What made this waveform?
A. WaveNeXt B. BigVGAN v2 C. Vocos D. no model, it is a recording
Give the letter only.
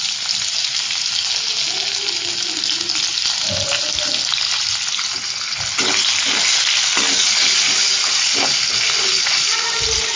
D